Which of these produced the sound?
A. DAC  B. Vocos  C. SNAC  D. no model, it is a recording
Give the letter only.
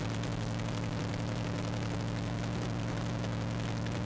D